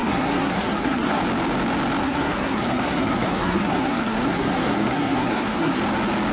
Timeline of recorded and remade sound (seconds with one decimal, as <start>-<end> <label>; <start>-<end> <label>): 0.0-1.2 remade; 1.2-2.0 recorded; 2.0-5.8 remade; 5.8-6.3 recorded